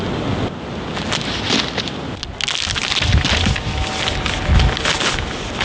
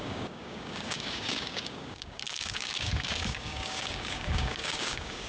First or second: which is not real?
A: second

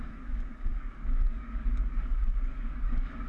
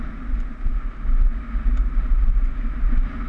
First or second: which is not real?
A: first